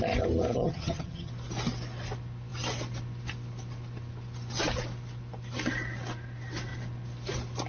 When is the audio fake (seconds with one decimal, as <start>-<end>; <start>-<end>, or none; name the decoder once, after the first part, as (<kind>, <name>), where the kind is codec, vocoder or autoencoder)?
0.5-1.3 (vocoder, HiFi-GAN)